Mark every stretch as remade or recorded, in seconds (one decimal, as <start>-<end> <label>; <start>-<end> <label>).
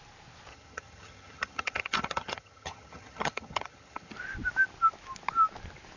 0.0-0.5 recorded; 0.5-4.1 remade; 4.1-6.0 recorded